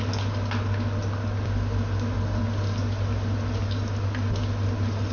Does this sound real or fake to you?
real